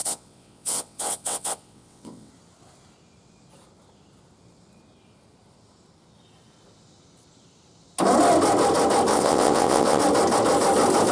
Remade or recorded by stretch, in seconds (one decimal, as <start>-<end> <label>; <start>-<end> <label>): 0.0-2.3 remade; 2.3-9.1 recorded; 9.1-10.0 remade; 10.0-11.1 recorded